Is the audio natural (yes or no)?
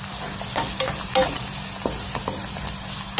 yes